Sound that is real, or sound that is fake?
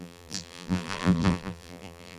fake